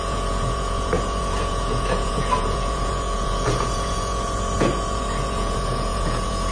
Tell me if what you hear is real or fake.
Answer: fake